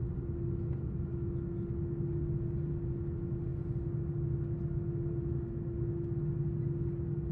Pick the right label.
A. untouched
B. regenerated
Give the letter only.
A